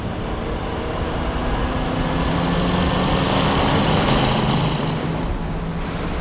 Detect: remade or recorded recorded